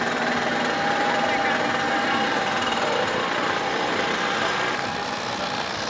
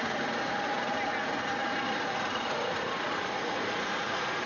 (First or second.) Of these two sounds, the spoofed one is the second